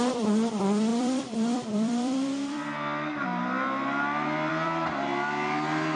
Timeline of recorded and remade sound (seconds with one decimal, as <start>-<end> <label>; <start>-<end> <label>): 0.0-5.1 remade; 5.1-6.0 recorded